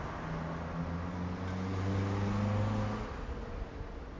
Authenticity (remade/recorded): recorded